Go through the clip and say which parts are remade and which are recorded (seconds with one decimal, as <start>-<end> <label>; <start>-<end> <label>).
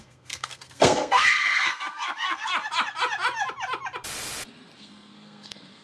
0.0-2.5 remade; 2.5-4.8 recorded; 4.8-5.8 remade